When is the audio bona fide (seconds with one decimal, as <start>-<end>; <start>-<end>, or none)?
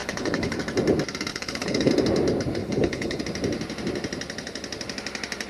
0.6-1.3; 1.9-2.6; 3.2-5.5